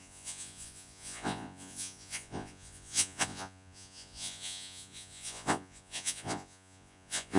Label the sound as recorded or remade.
remade